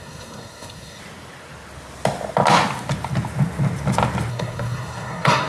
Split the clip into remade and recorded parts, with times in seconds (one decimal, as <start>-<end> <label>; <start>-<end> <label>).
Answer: 0.0-1.0 remade; 1.0-4.3 recorded; 4.3-5.5 remade